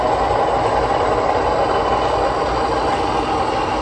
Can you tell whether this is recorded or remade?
recorded